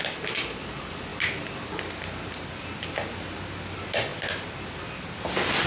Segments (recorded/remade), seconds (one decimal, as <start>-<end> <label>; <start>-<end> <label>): 0.0-5.7 recorded